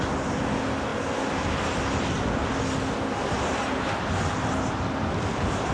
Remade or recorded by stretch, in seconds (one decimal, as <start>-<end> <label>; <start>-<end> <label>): 0.0-5.7 recorded